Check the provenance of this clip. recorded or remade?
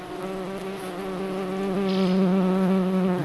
recorded